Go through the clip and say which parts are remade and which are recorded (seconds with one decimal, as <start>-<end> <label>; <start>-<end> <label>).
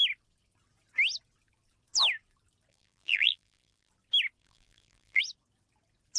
0.0-2.7 recorded; 2.7-3.9 remade; 3.9-4.4 recorded; 4.4-5.2 remade; 5.2-6.2 recorded